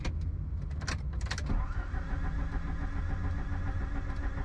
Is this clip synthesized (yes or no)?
no